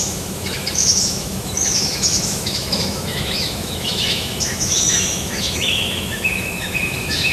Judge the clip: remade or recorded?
remade